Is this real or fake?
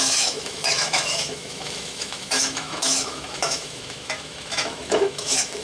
fake